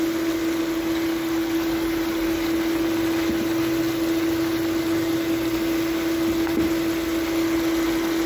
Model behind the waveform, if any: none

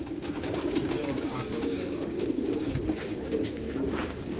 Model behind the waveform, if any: codec, DAC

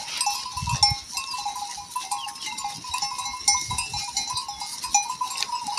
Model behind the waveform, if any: none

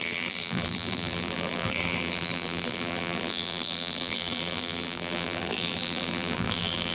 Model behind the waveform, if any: vocoder, BigVGAN v2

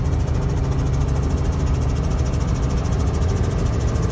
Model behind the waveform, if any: none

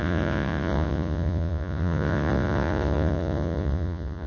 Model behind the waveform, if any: vocoder, Vocos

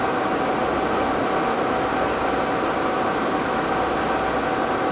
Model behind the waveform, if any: none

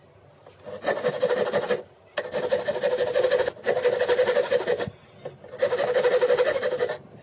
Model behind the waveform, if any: none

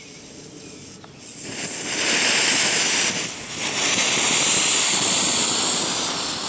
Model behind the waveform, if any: none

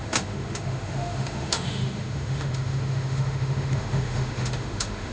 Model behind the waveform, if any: autoencoder, DAC-VAE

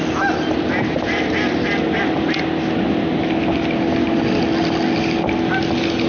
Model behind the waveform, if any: none